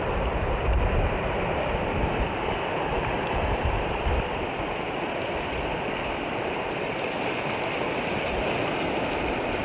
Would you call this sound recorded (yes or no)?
yes